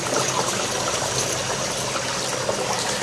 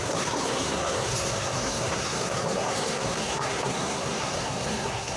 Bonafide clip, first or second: first